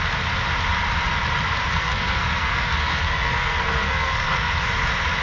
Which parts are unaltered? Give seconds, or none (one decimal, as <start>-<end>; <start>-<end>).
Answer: 0.0-1.7; 4.5-5.2